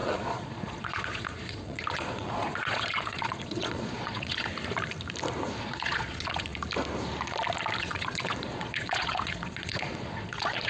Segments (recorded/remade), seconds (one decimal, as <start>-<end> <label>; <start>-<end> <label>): 0.0-4.5 remade; 4.5-5.6 recorded; 5.6-6.5 remade; 6.5-7.8 recorded; 7.8-10.7 remade